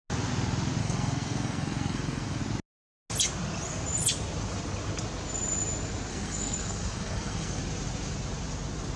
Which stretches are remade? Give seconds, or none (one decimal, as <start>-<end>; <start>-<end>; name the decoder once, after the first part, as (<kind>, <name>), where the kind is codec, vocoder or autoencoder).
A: 0.8-2.4 (codec, SNAC); 6.1-7.6